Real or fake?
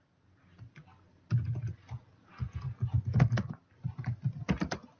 real